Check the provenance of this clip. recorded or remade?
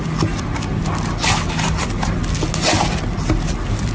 recorded